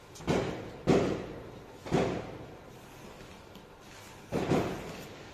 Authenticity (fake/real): real